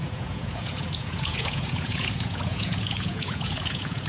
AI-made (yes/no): yes